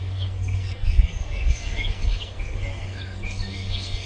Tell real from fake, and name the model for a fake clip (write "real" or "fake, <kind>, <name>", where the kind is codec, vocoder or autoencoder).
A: fake, codec, SNAC